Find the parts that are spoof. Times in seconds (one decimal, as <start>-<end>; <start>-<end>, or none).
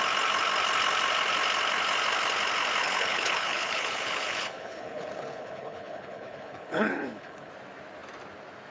2.8-7.5